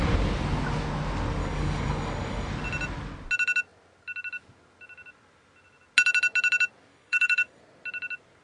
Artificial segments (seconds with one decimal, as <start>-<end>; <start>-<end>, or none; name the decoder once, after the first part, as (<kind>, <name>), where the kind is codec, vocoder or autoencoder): 1.4-2.5 (codec, DAC); 6.9-7.6